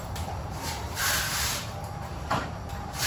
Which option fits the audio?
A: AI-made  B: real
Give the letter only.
A